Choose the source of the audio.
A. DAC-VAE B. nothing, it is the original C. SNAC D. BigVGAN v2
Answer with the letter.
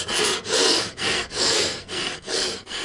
C